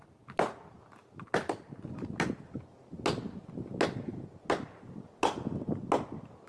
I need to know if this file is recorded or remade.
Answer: recorded